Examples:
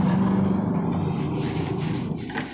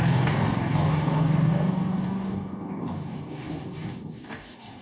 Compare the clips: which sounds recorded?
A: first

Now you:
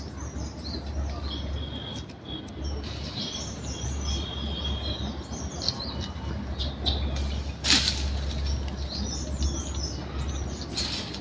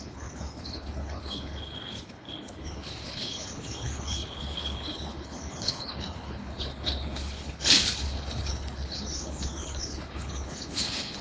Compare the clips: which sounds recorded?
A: first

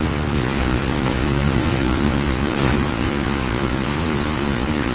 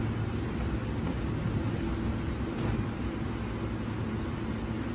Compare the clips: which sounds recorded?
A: second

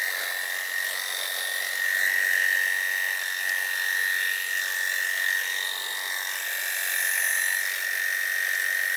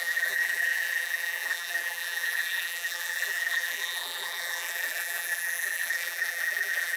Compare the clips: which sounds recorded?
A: first